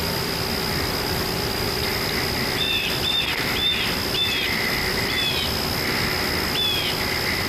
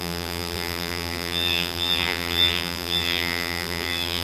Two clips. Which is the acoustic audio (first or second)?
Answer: first